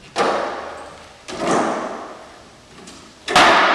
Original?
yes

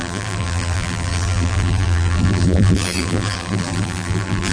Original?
no